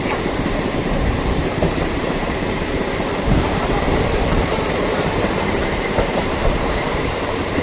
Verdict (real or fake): fake